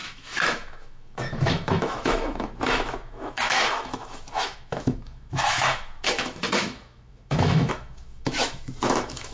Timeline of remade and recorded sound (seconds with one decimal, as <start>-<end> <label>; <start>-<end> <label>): 0.0-9.3 remade